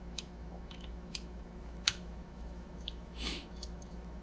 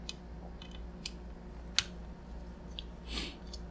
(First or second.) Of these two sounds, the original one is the second